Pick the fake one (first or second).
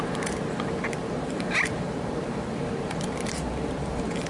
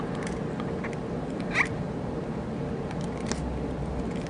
first